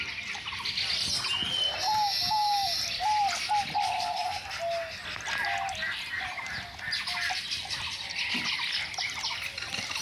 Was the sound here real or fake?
real